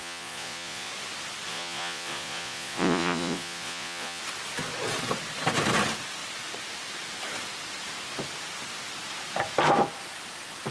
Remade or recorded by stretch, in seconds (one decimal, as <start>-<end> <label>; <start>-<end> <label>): 0.0-0.9 remade; 0.9-1.5 recorded; 1.5-4.2 remade; 4.2-10.7 recorded